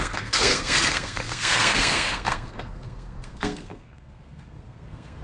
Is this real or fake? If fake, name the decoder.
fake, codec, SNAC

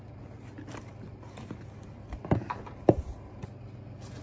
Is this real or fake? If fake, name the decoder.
real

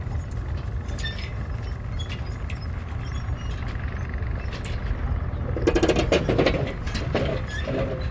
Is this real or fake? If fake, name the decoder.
real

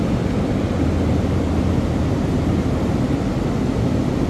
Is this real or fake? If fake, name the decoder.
real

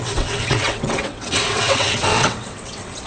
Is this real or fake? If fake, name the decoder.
fake, vocoder, WaveNeXt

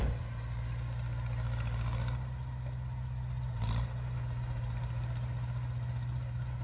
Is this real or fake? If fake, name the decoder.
real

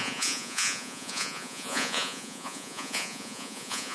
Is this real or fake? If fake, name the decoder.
fake, vocoder, Vocos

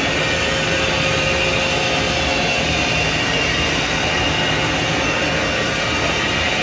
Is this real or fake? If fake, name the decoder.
real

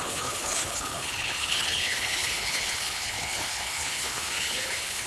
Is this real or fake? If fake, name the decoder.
fake, codec, HILCodec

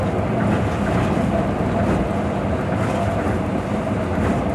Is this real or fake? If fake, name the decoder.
real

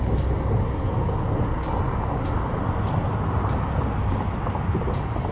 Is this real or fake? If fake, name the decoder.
real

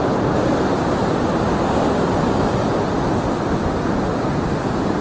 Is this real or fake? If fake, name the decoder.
real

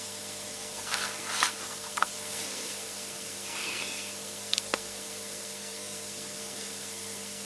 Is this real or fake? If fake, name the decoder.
fake, codec, SNAC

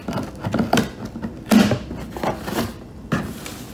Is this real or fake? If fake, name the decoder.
real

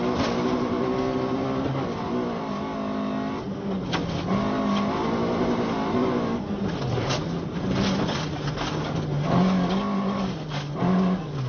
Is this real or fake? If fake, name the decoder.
real